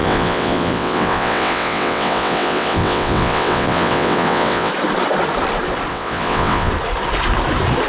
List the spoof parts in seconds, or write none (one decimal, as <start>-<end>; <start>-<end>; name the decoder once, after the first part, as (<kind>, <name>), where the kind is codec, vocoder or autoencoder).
0.0-4.7 (vocoder, WaveNeXt); 5.9-6.7